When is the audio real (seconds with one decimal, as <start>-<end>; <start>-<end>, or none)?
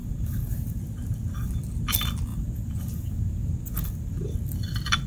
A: 0.8-2.3; 3.5-5.1